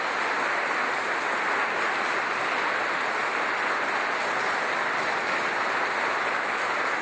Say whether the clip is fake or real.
real